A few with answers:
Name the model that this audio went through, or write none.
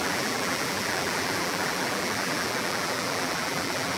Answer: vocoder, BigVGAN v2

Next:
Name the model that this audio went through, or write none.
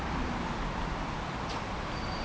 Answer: none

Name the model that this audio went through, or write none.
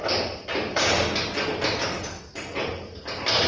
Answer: none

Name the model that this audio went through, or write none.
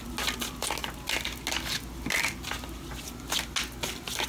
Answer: none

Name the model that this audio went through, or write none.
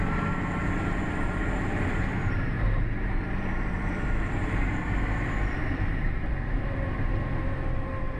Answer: vocoder, BigVGAN v2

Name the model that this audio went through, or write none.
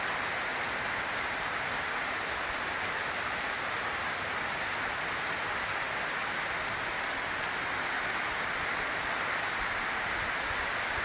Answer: none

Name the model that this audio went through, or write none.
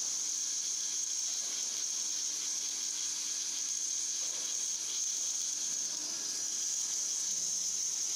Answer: none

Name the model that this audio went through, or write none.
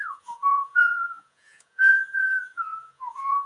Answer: vocoder, Vocos